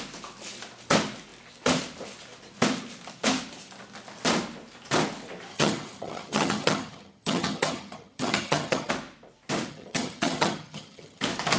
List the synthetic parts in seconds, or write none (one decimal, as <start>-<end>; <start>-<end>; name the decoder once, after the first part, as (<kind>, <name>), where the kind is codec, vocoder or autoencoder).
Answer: 5.5-8.9 (vocoder, HiFi-GAN); 9.7-11.2